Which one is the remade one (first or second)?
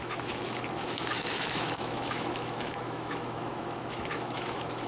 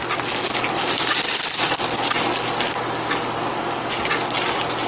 first